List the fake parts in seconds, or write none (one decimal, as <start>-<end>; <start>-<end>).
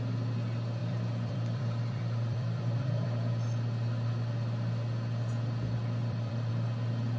0.8-3.3; 6.0-6.5